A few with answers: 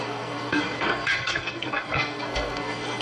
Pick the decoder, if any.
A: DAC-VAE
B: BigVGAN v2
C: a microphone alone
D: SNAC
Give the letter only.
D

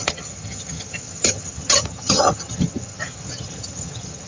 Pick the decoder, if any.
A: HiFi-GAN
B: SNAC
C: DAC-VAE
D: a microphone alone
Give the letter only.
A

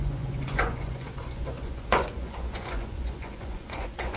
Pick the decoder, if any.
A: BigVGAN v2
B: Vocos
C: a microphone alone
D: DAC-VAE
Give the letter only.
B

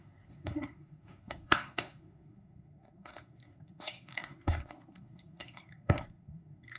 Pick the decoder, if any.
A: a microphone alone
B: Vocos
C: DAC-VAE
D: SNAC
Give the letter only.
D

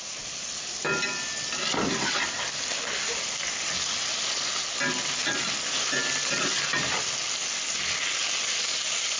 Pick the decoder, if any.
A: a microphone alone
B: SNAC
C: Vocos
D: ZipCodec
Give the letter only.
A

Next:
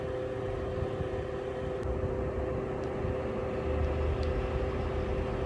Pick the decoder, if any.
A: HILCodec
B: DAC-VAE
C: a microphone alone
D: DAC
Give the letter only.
C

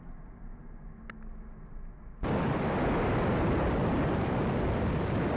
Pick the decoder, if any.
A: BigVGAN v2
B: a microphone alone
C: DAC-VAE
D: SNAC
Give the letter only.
B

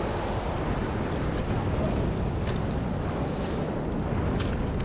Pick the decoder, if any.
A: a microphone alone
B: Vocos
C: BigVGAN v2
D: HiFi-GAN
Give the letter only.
A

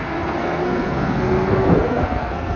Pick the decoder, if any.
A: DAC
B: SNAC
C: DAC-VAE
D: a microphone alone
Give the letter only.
B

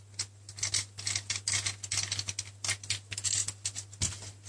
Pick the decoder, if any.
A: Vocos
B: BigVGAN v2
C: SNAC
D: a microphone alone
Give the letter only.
D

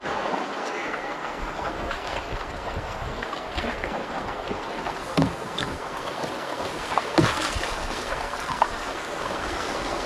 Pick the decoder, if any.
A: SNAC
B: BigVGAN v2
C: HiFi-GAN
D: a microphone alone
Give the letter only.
A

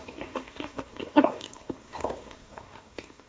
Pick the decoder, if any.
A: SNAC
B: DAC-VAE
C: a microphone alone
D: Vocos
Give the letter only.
A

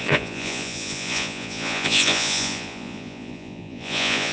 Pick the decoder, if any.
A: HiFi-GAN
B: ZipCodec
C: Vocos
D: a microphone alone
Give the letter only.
C